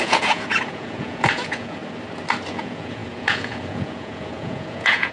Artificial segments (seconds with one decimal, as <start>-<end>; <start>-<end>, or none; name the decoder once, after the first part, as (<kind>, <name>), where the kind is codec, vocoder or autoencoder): 0.0-1.8 (vocoder, Vocos); 2.5-5.1